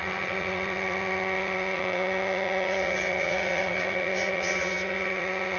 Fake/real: fake